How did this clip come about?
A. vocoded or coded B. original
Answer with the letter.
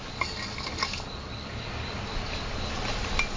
B